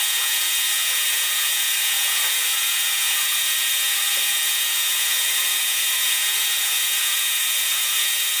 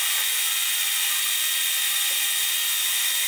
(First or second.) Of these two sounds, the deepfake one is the first